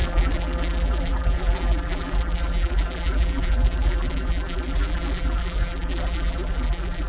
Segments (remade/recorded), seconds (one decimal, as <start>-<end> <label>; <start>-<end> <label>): 0.0-7.1 remade